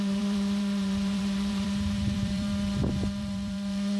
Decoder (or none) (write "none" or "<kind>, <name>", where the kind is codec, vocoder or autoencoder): vocoder, BigVGAN v2